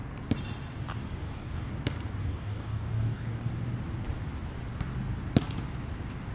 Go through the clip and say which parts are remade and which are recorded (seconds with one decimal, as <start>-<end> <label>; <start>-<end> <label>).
0.0-1.2 recorded; 1.2-1.7 remade; 1.7-2.2 recorded; 2.2-3.5 remade; 3.5-6.3 recorded